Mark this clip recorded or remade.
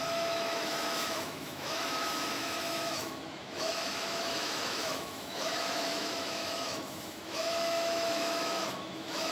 remade